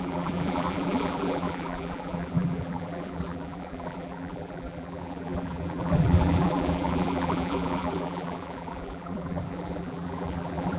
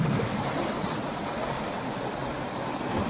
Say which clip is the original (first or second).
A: second